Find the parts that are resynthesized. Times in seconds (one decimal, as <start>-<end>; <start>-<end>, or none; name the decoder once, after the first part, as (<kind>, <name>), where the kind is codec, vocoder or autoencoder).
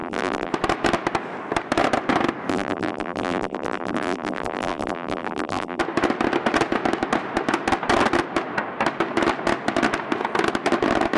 0.0-0.5 (vocoder, BigVGAN v2); 2.5-5.8